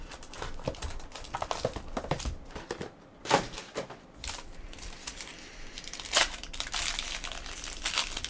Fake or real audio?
fake